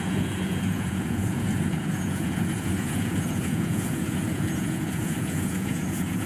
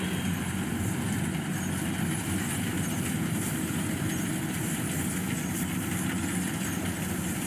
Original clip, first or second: second